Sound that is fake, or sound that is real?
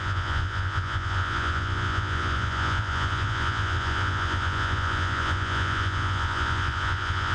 fake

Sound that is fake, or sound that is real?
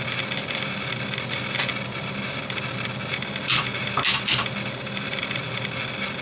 real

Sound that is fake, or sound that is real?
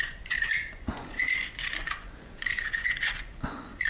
fake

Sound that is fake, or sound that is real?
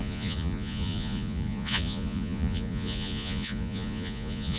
fake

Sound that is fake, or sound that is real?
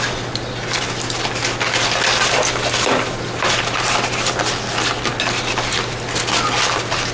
real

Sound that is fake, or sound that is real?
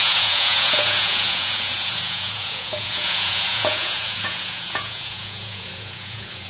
fake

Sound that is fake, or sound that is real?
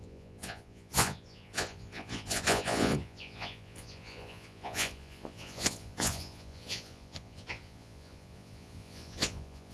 fake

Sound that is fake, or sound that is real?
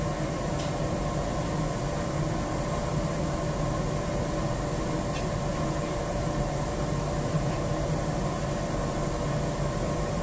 real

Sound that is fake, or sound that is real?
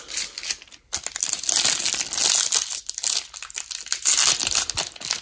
real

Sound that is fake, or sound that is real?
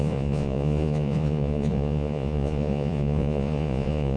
fake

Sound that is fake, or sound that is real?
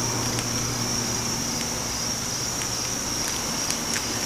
real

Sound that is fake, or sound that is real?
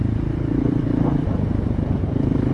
real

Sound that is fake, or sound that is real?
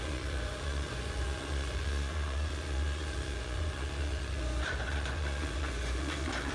fake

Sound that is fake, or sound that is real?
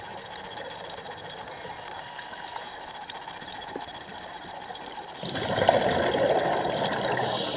real